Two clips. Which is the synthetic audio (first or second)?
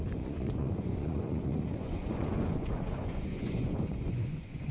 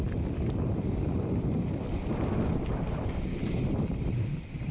first